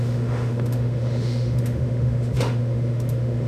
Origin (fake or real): fake